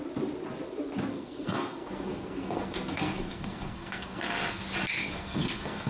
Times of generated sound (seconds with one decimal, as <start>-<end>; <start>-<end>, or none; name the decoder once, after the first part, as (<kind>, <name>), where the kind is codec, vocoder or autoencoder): 1.1-4.6 (codec, SNAC); 5.0-5.9